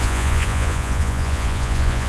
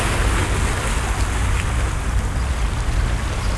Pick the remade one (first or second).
first